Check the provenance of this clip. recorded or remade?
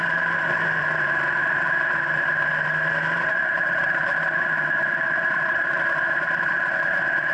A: remade